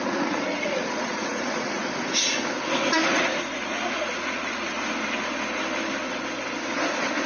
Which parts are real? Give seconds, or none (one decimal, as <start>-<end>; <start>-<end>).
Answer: 1.8-3.1; 4.7-7.3